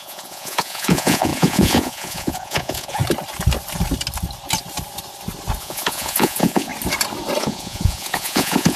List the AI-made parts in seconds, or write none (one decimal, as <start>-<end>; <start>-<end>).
0.0-3.0; 5.6-6.7; 7.4-8.8